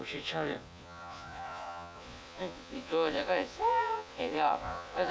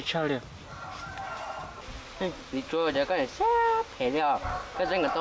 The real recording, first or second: second